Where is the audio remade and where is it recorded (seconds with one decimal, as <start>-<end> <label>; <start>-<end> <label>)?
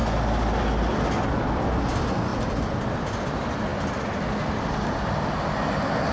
0.0-6.1 recorded